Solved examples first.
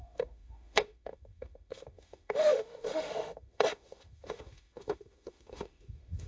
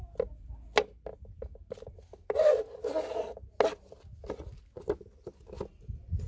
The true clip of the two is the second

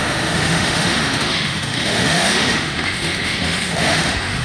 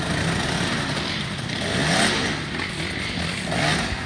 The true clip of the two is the second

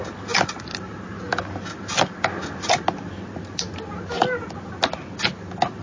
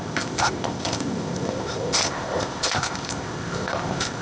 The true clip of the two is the first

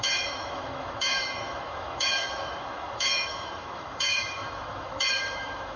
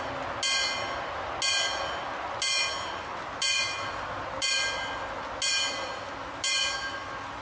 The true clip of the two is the second